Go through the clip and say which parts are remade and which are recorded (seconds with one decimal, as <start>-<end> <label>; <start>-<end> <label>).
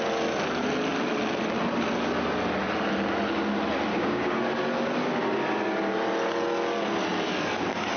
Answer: 0.0-3.9 recorded; 3.9-4.4 remade; 4.4-8.0 recorded